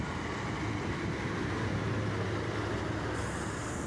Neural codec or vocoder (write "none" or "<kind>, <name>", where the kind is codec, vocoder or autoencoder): none